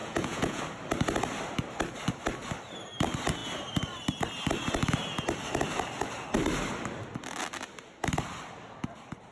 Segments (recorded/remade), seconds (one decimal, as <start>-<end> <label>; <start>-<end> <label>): 0.0-0.6 remade; 0.6-9.3 recorded